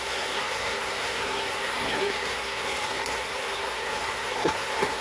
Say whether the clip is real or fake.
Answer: fake